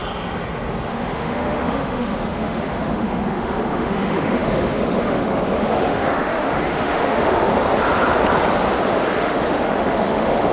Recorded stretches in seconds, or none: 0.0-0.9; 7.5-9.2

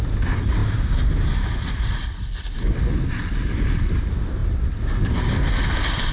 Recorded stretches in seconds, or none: 0.0-6.1

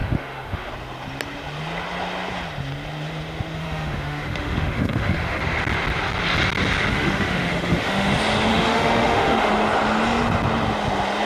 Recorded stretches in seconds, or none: 0.7-3.6; 5.4-6.9; 8.1-8.5; 9.5-11.3

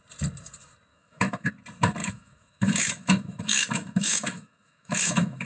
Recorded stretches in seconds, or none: 0.0-0.9; 1.5-2.0

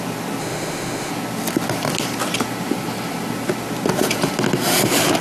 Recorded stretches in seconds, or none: 0.0-0.4; 1.1-5.2

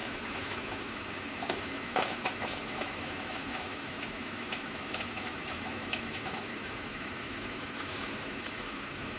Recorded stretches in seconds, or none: none

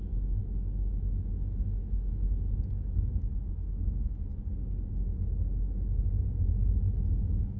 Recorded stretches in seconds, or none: 4.3-7.1

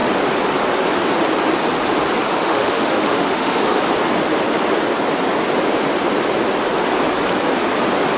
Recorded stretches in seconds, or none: 0.0-2.4; 3.6-8.2